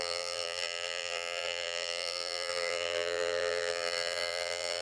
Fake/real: fake